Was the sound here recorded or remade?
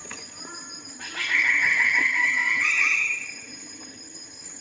remade